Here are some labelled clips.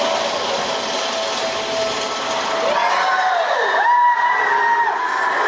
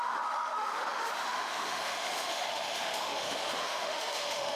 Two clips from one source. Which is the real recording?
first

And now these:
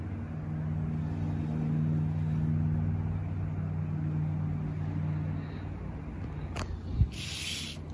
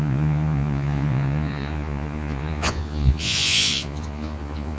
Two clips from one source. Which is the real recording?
first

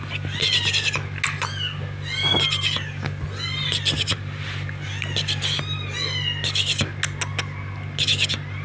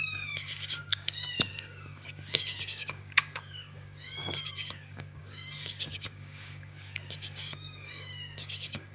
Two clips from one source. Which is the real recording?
first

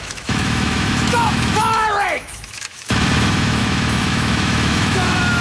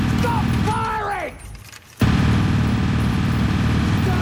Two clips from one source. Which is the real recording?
second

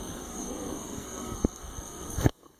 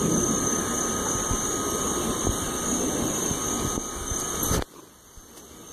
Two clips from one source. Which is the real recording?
second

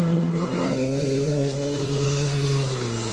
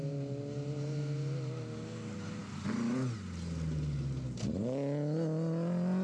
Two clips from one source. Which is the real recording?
second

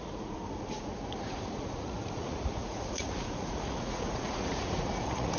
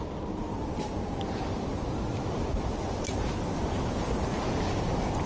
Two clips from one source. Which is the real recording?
second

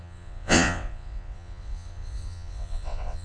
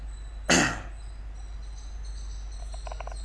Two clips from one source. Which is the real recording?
second